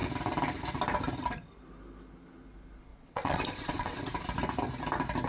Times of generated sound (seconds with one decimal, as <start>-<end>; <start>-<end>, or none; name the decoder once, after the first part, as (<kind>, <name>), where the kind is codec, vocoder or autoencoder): 2.9-4.1 (vocoder, WaveNeXt)